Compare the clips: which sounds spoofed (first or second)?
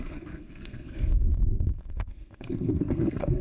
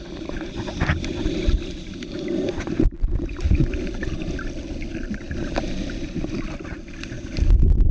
first